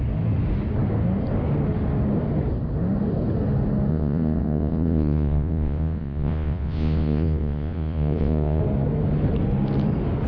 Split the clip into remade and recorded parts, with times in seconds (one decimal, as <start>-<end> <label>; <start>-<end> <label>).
0.0-3.9 recorded; 3.9-8.6 remade; 8.6-10.3 recorded

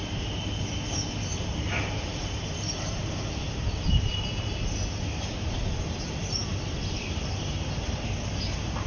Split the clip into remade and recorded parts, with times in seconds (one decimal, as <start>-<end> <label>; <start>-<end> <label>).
0.0-8.9 recorded

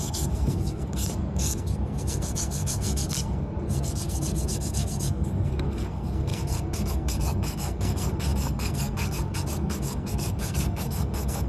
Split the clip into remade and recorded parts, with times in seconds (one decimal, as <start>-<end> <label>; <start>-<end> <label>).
0.0-11.5 remade

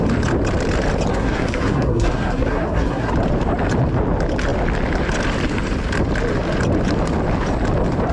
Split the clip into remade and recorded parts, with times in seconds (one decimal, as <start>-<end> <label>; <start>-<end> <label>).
0.0-1.1 recorded; 1.1-3.1 remade; 3.1-8.1 recorded

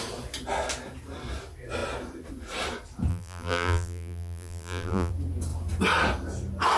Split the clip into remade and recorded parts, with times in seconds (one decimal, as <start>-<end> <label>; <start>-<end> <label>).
0.0-3.1 recorded; 3.1-5.1 remade; 5.1-6.8 recorded

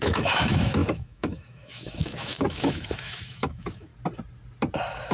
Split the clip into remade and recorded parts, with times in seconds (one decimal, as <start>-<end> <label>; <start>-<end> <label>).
0.0-3.9 remade; 3.9-5.1 recorded